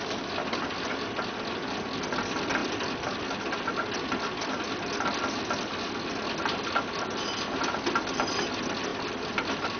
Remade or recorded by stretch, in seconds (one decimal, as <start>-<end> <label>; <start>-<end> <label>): 0.0-2.6 recorded; 2.6-3.2 remade; 3.2-8.9 recorded; 8.9-9.8 remade